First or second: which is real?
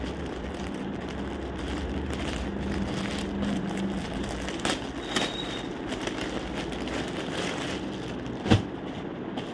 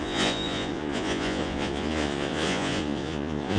first